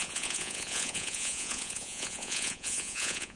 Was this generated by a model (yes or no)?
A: yes